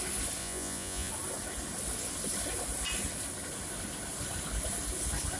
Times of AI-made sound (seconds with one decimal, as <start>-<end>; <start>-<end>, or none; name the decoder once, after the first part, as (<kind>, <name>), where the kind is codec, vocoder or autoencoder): 0.4-1.1 (vocoder, Vocos)